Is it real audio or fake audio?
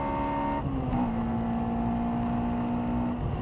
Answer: real